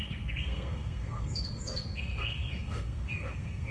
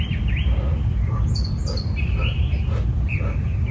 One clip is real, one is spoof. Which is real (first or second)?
second